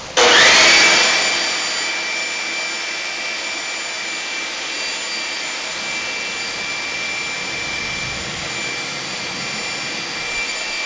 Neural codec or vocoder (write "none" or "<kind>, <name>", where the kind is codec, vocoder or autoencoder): none